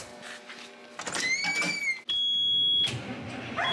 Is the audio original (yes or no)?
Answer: yes